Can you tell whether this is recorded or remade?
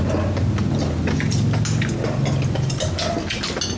recorded